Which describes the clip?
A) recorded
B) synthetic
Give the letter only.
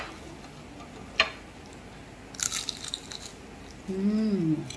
A